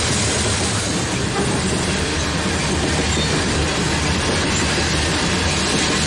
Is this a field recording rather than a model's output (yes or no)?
yes